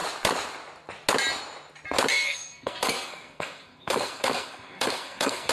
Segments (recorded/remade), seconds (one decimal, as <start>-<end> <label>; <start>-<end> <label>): 0.0-2.1 recorded; 2.1-5.5 remade